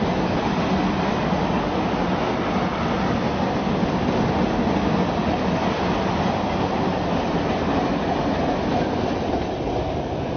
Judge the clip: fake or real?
real